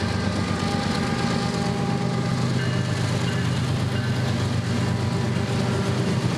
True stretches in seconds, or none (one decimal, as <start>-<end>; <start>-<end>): 0.0-6.4